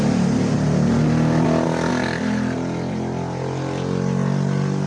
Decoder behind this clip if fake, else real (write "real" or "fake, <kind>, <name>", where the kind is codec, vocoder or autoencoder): real